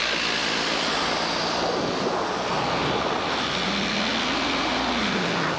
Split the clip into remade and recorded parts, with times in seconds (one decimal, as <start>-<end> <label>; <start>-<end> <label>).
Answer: 0.0-0.4 recorded; 0.4-2.1 remade; 2.1-4.1 recorded; 4.1-4.9 remade; 4.9-5.6 recorded